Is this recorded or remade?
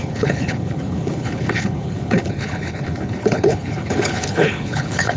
remade